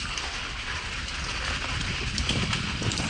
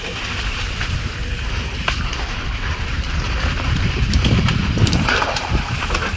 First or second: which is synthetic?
second